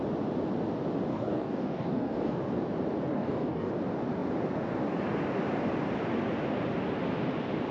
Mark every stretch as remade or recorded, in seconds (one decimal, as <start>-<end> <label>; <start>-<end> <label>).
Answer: 0.0-1.1 recorded; 1.1-2.5 remade; 2.5-3.1 recorded; 3.1-3.7 remade; 3.7-7.7 recorded